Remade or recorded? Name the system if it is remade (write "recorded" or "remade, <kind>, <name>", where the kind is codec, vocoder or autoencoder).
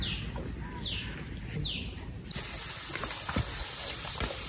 recorded